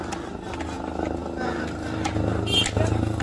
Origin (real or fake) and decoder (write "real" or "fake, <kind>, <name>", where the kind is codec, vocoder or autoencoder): real